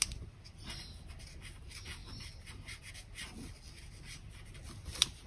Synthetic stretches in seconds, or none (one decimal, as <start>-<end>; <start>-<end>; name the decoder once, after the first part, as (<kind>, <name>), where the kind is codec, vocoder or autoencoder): none